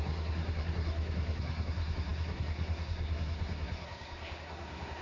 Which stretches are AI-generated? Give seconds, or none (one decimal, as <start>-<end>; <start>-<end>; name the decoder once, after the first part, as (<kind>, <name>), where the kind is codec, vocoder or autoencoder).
0.0-5.0 (codec, SNAC)